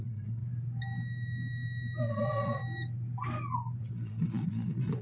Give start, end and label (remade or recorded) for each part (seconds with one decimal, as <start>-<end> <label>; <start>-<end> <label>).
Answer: 0.0-0.4 remade; 0.4-2.0 recorded; 2.0-2.6 remade; 2.6-3.8 recorded; 3.8-5.0 remade